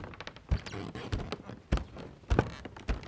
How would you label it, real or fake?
real